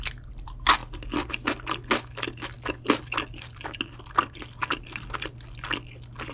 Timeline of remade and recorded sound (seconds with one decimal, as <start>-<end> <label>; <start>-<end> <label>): 0.0-6.3 recorded